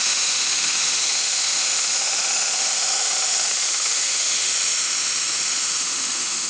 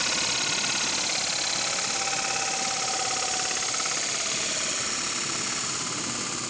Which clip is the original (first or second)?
second